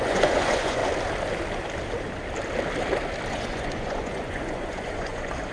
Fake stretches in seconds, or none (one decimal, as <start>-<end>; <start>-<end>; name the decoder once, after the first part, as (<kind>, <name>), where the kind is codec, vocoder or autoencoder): 0.0-0.8 (vocoder, Vocos); 3.3-5.5